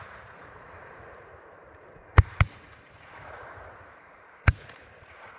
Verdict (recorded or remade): remade